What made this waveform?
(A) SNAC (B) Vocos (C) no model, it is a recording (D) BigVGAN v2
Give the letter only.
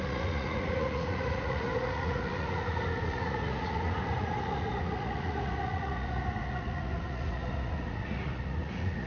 B